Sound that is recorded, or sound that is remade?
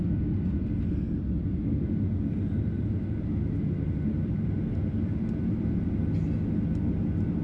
recorded